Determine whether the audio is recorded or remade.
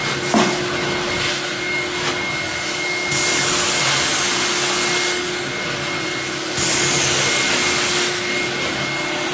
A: recorded